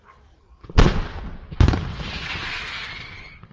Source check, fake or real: real